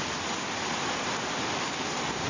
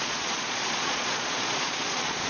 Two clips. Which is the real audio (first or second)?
first